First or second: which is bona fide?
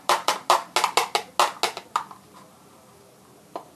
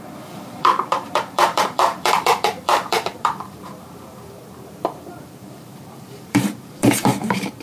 first